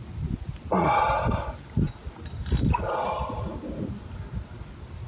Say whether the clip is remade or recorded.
recorded